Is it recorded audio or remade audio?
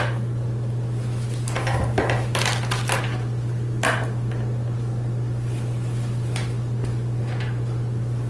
recorded